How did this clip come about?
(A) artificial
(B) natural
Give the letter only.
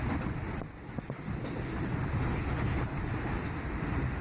B